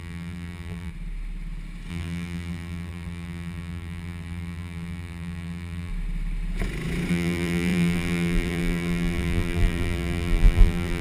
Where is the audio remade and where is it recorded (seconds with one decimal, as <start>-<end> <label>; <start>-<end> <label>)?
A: 0.0-0.9 remade; 0.9-1.9 recorded; 1.9-5.9 remade; 5.9-7.1 recorded; 7.1-11.0 remade